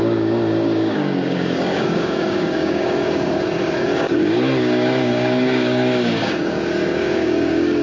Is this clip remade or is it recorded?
remade